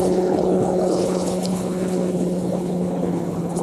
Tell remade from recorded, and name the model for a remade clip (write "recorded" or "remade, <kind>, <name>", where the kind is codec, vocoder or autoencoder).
remade, codec, HILCodec